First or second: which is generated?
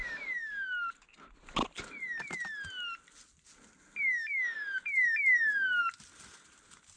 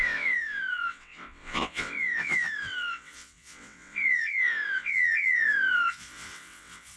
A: second